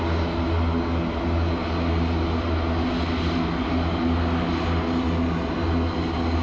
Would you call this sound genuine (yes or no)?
yes